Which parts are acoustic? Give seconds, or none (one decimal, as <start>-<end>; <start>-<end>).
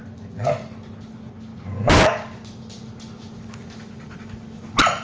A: 0.0-5.0